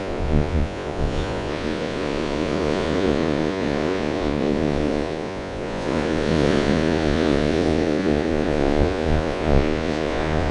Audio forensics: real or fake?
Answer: fake